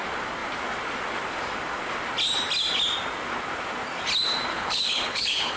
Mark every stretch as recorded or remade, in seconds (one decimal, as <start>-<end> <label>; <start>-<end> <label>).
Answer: 0.0-4.5 recorded; 4.5-5.6 remade